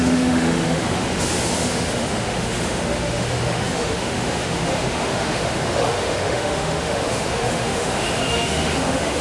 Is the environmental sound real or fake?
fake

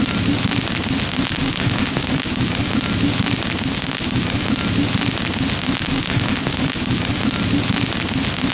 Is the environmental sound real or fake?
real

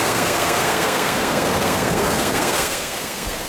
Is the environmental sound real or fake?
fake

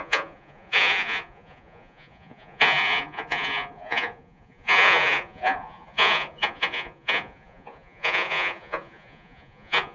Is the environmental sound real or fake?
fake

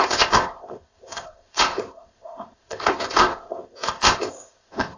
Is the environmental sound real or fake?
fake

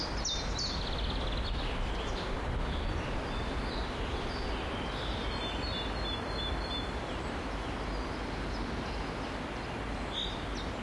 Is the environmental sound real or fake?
real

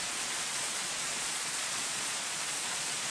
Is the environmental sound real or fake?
fake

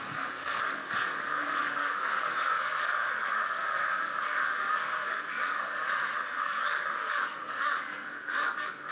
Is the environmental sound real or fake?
fake